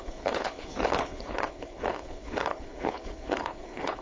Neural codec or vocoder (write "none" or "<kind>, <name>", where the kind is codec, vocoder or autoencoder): codec, HILCodec